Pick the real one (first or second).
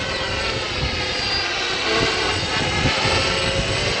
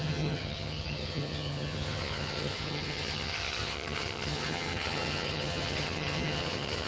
first